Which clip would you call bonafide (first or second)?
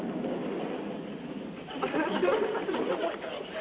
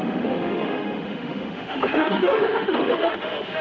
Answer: first